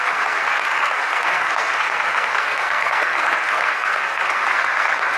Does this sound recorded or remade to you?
remade